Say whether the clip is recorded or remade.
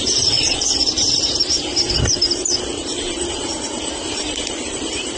remade